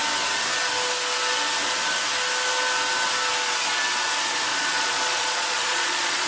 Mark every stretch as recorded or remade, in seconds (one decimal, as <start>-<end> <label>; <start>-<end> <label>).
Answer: 0.0-4.5 recorded; 4.5-6.3 remade